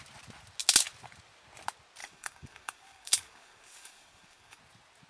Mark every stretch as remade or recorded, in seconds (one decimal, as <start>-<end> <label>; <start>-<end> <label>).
0.0-2.0 recorded; 2.0-4.6 remade; 4.6-5.1 recorded